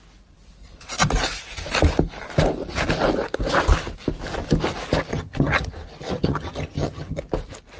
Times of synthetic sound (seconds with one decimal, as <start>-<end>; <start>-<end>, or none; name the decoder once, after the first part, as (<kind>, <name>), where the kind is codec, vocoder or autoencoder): 5.1-5.7 (vocoder, HiFi-GAN); 6.2-7.2